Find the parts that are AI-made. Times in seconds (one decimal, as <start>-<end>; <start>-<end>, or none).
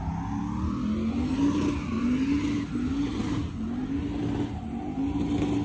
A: none